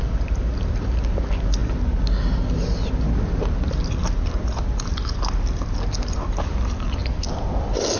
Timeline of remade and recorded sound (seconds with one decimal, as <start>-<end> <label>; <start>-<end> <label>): 0.0-8.0 recorded

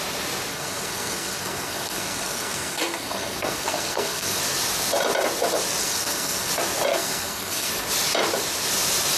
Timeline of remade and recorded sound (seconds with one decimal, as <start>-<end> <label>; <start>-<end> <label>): 0.0-0.5 recorded; 0.5-4.4 remade; 4.4-5.8 recorded; 5.8-6.5 remade; 6.5-6.9 recorded; 6.9-7.7 remade; 7.7-9.2 recorded

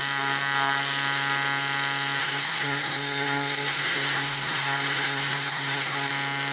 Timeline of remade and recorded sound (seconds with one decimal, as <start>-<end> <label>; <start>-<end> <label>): 0.0-2.2 recorded; 2.2-6.1 remade; 6.1-6.5 recorded

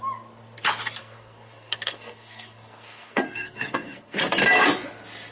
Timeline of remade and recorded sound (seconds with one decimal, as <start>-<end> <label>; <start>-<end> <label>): 0.0-1.0 recorded; 1.0-4.2 remade; 4.2-5.3 recorded

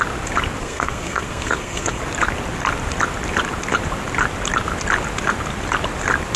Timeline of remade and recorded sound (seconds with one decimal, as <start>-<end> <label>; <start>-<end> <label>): 0.0-0.6 recorded; 0.6-2.0 remade; 2.0-6.4 recorded

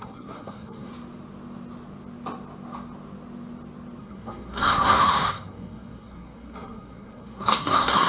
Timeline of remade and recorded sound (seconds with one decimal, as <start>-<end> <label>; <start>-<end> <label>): 0.0-0.9 remade; 0.9-4.0 recorded; 4.0-8.1 remade